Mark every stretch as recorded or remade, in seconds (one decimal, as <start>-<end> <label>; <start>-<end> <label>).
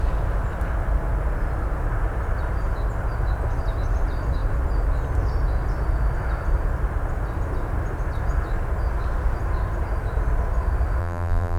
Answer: 0.0-11.0 recorded; 11.0-11.6 remade